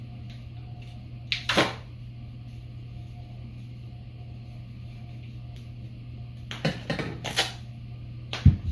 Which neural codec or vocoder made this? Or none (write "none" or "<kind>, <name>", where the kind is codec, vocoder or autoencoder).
none